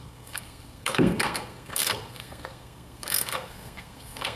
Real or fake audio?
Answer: fake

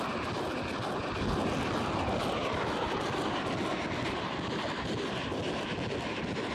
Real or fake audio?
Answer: real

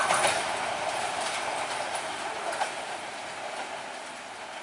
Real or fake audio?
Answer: real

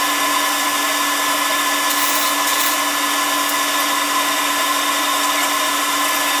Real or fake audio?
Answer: real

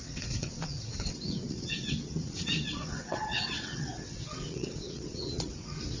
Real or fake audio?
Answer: fake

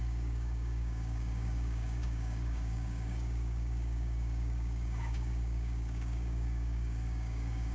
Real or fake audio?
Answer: fake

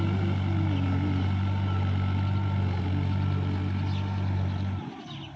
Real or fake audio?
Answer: real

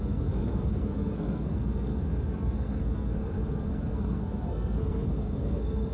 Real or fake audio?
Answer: fake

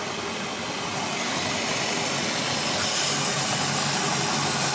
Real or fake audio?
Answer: real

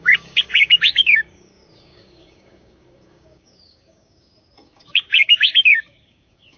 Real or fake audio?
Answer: fake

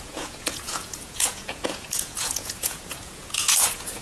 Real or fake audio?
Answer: fake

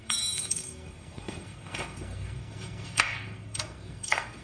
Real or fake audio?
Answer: fake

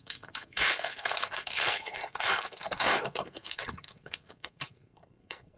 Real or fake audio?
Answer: fake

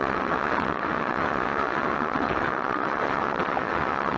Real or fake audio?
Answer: fake